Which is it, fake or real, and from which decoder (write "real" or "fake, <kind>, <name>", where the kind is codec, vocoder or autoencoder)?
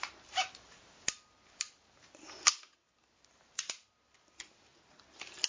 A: real